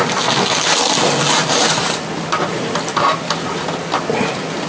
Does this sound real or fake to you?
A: real